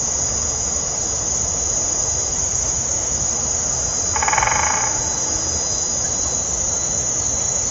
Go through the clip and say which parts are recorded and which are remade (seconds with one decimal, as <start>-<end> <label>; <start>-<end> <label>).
0.0-2.3 recorded; 2.3-3.2 remade; 3.2-7.7 recorded

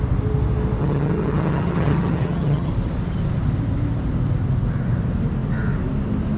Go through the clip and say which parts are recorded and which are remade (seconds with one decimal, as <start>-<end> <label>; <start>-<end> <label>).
0.0-0.8 recorded; 0.8-2.7 remade; 2.7-6.4 recorded